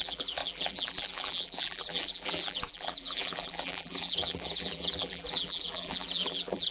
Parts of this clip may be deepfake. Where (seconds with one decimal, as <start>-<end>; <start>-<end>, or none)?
0.0-6.7

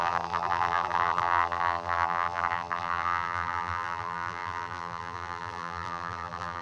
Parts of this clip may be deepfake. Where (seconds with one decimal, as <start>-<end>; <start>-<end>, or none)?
0.0-6.6

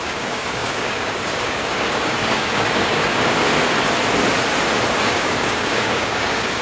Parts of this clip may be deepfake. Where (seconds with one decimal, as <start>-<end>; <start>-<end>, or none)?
0.0-3.5; 4.9-6.6

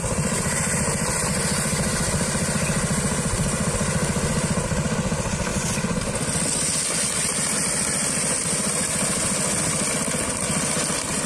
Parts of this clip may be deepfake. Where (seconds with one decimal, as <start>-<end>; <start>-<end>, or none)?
5.5-6.0